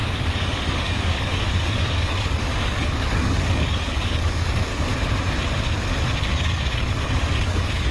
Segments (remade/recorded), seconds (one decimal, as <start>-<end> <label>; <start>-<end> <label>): 0.0-4.9 remade; 4.9-6.2 recorded; 6.2-7.9 remade